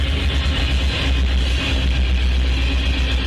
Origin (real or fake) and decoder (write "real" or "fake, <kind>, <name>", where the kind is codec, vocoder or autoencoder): real